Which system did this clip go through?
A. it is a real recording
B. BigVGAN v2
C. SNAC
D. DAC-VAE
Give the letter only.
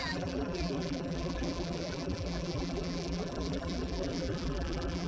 B